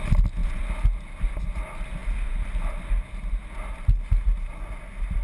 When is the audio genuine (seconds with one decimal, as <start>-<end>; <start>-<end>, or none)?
0.0-5.2